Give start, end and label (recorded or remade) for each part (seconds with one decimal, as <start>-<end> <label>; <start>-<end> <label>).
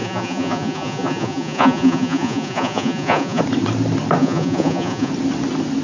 0.0-3.4 remade; 3.4-4.2 recorded; 4.2-5.1 remade; 5.1-5.8 recorded